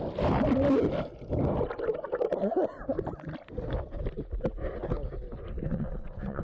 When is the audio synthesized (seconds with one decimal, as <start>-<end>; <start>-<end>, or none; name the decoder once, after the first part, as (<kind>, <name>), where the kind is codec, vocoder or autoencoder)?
5.7-6.4 (vocoder, WaveNeXt)

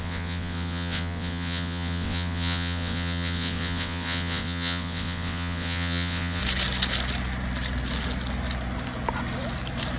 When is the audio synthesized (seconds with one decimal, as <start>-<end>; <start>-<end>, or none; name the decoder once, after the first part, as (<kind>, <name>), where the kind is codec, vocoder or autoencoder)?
0.0-6.4 (vocoder, WaveNeXt)

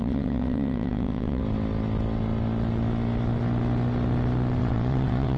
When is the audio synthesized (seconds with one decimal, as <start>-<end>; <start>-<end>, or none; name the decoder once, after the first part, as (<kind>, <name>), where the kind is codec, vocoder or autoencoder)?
0.0-1.4 (vocoder, WaveNeXt); 4.6-5.4

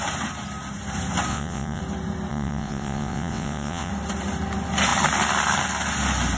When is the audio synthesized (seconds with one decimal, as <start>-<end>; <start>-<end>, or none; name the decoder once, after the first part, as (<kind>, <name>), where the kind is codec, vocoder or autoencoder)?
1.3-1.8 (vocoder, WaveNeXt); 2.3-3.9

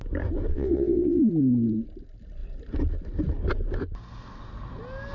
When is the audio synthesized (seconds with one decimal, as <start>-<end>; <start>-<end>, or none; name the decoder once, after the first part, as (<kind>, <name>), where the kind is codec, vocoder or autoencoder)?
0.5-1.2 (vocoder, WaveNeXt)